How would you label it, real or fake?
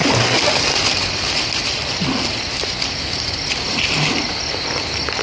real